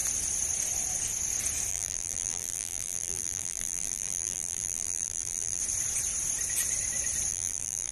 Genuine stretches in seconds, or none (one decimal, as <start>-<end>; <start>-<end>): 0.0-1.7; 5.6-7.3